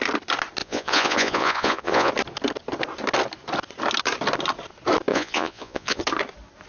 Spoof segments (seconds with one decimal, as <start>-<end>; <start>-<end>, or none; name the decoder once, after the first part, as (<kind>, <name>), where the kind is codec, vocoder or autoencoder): 0.6-2.1 (vocoder, Vocos); 5.1-6.0